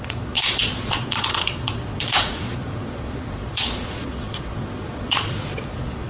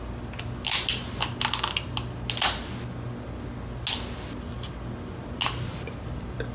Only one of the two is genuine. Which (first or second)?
second